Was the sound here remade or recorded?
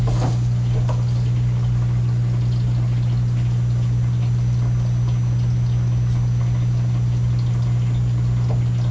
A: recorded